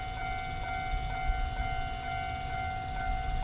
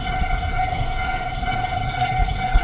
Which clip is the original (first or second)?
first